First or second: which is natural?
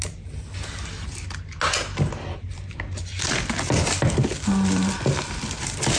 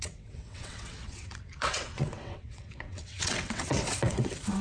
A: first